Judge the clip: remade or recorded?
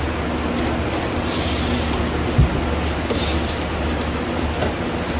recorded